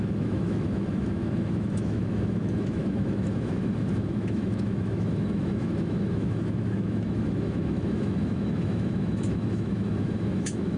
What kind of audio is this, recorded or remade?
remade